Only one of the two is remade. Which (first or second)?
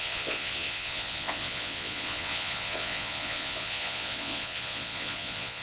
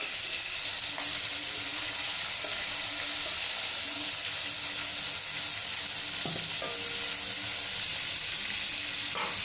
first